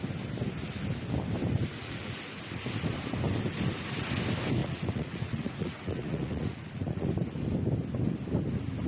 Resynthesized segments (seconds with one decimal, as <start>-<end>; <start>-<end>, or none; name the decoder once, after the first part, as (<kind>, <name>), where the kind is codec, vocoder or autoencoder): 1.8-2.4 (vocoder, Vocos); 4.6-7.1